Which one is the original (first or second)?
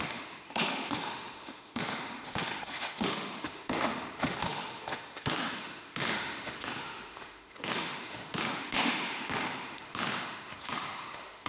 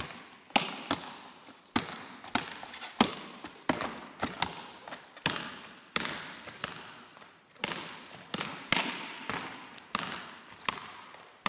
second